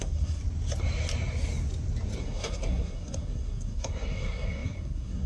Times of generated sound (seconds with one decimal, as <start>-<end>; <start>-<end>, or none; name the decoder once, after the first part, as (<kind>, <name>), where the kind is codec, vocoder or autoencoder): 0.0-0.4 (codec, SNAC); 2.2-5.3